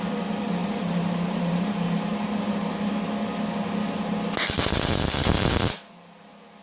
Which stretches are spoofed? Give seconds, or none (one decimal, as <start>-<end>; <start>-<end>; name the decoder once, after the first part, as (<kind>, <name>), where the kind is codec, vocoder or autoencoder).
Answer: 0.6-2.9 (vocoder, BigVGAN v2); 5.2-6.6